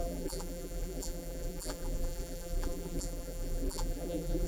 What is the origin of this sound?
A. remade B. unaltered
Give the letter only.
A